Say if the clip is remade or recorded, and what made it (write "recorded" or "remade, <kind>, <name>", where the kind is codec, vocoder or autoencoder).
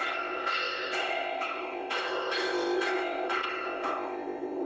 remade, codec, ZipCodec